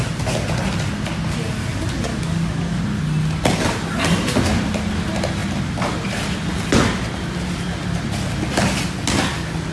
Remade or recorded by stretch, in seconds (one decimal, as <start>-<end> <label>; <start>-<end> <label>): 0.0-2.1 recorded; 2.1-2.8 remade; 2.8-9.7 recorded